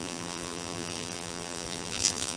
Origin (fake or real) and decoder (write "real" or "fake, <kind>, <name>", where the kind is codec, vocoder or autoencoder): fake, vocoder, BigVGAN v2